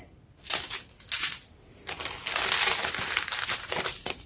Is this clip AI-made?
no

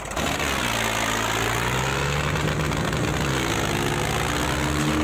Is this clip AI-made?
no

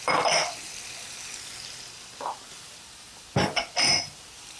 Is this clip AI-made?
yes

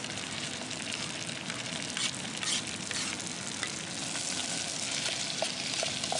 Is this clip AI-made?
no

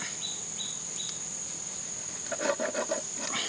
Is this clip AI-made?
no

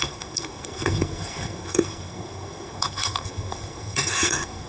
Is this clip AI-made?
yes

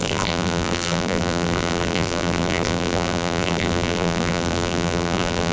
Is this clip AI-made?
yes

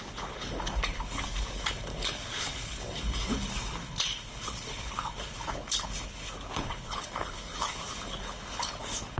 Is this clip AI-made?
yes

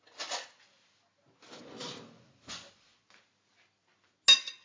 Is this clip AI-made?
no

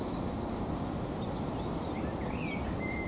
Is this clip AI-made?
no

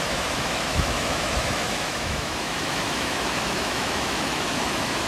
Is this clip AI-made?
yes